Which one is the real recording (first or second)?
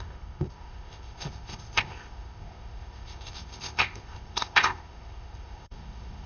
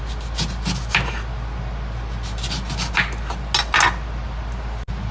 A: second